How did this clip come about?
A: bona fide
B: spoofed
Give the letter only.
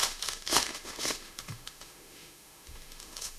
B